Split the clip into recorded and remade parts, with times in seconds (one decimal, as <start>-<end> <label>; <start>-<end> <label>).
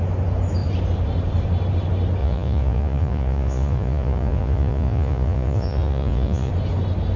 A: 0.0-2.2 recorded; 2.2-6.5 remade; 6.5-7.2 recorded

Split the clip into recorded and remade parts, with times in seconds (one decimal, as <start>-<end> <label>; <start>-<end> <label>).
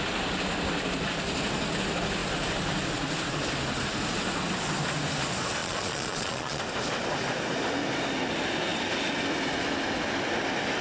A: 0.0-5.6 recorded; 5.6-6.6 remade; 6.6-10.8 recorded